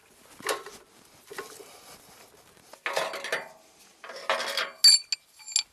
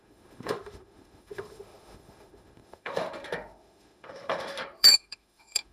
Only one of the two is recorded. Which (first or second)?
first